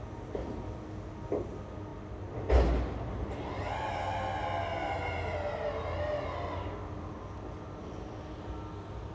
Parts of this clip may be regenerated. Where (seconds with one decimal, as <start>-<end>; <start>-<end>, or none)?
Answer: none